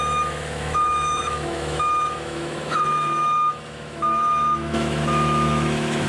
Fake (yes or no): yes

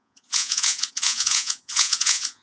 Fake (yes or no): yes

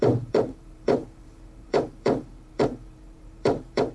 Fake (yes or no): yes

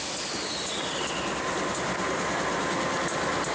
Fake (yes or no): no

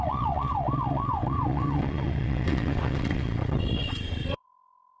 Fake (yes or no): yes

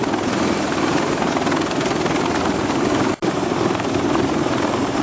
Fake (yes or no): no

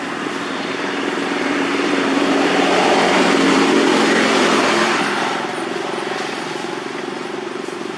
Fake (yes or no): yes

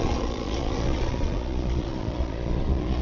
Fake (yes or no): yes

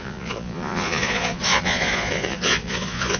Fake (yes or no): yes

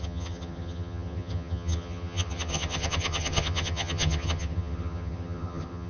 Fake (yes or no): yes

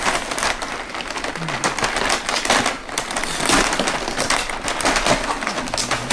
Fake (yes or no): no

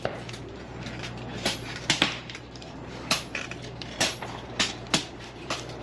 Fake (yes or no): yes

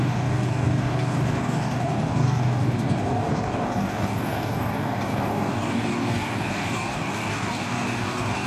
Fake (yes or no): yes